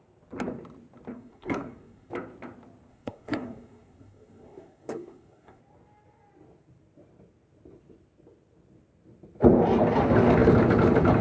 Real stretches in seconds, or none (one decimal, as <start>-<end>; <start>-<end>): 0.0-1.1; 2.1-2.9; 5.6-11.2

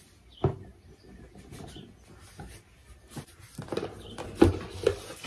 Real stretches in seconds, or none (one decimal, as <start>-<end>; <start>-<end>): 0.0-5.3

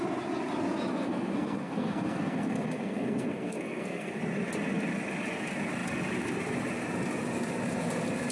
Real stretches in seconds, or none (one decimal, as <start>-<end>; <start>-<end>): 0.0-0.9; 4.2-8.3

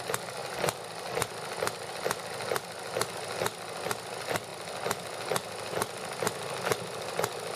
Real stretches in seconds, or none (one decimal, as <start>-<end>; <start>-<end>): 0.0-7.6

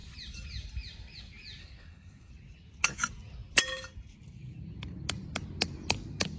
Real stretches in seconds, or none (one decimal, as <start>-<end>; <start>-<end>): 0.0-1.6; 2.3-6.4

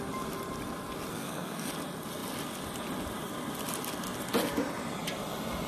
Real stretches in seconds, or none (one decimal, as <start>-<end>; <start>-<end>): 0.0-1.1; 1.7-5.7

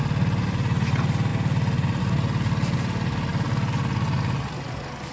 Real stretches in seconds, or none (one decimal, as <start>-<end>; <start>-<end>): 0.0-5.1

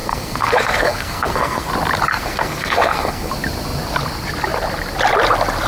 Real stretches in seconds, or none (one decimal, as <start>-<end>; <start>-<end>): 1.7-2.1; 3.3-5.7